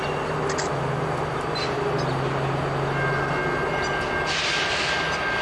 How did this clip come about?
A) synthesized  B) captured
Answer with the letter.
B